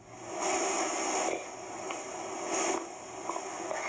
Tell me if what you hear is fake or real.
real